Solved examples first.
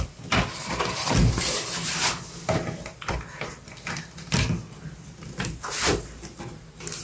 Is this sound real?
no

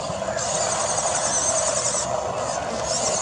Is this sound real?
yes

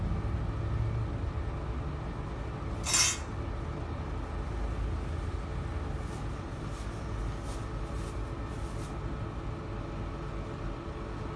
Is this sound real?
yes